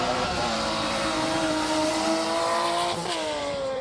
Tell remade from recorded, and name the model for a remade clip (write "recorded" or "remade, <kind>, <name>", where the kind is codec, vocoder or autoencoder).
remade, vocoder, BigVGAN v2